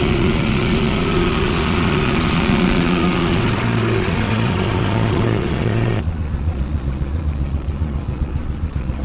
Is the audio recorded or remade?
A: remade